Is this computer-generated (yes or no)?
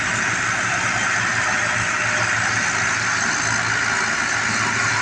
no